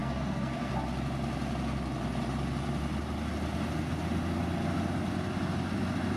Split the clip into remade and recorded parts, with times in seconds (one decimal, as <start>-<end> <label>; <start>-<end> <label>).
0.0-0.7 remade; 0.7-6.2 recorded